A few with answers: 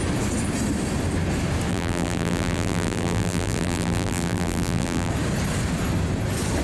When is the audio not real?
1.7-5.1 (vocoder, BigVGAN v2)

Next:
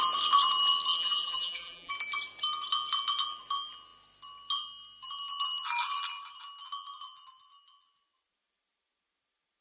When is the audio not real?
1.0-1.9 (vocoder, BigVGAN v2)

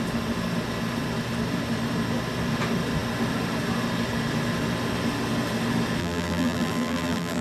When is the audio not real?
6.0-7.4 (vocoder, BigVGAN v2)

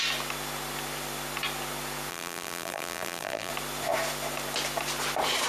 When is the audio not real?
2.1-3.5 (vocoder, BigVGAN v2)

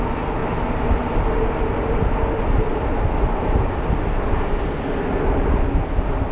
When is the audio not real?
0.4-1.3 (vocoder, BigVGAN v2); 2.7-4.1